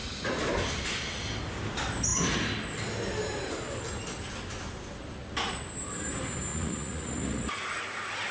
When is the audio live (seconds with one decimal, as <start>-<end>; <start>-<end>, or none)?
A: 0.0-6.5; 7.8-8.3